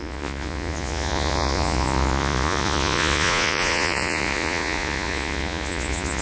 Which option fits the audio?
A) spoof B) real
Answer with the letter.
A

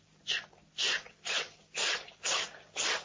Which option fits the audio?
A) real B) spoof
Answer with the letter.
A